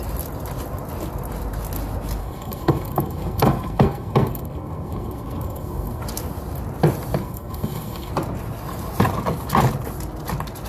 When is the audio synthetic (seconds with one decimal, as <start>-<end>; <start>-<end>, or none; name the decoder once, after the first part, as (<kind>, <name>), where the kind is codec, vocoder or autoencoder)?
2.2-6.0 (codec, SNAC); 7.2-8.1